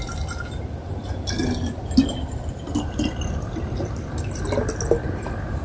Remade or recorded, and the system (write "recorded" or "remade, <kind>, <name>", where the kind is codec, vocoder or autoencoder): recorded